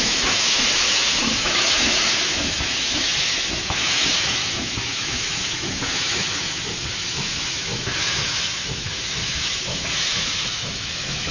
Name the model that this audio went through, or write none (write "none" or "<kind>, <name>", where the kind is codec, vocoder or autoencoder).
autoencoder, DAC-VAE